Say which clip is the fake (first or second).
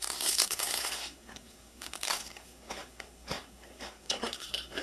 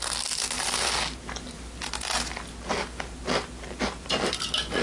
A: first